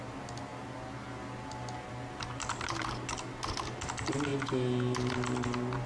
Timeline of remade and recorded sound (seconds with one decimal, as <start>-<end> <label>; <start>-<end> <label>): 0.0-5.9 recorded